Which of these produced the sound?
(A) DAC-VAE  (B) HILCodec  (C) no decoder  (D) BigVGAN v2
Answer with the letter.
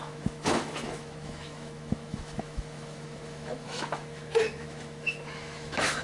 A